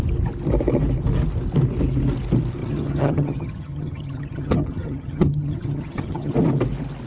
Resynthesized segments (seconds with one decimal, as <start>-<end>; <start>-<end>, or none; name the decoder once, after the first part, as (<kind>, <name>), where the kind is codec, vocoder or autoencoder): 2.6-6.3 (vocoder, HiFi-GAN)